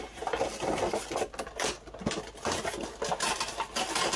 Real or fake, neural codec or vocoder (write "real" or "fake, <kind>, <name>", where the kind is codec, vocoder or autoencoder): real